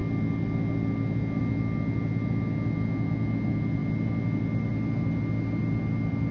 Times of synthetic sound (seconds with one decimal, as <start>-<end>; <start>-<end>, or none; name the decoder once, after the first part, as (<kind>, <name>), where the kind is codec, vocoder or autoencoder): none